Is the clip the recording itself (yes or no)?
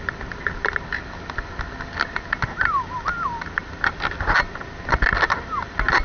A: yes